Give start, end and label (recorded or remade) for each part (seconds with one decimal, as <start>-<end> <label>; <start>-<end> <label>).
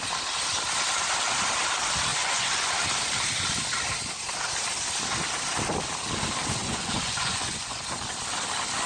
0.0-2.1 recorded; 2.1-2.7 remade; 2.7-6.6 recorded; 6.6-7.8 remade; 7.8-8.9 recorded